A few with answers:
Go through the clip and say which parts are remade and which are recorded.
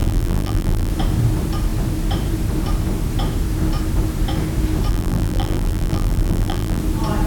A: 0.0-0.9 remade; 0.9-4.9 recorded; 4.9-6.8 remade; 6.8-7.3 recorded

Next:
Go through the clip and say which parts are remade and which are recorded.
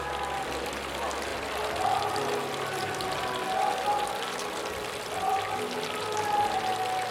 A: 0.0-7.1 recorded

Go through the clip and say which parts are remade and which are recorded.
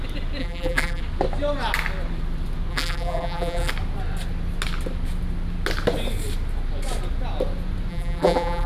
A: 0.0-0.4 recorded; 0.4-1.0 remade; 1.0-2.7 recorded; 2.7-3.7 remade; 3.7-7.9 recorded; 7.9-8.7 remade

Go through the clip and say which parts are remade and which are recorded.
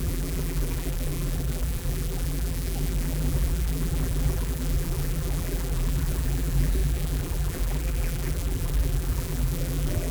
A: 0.0-10.1 remade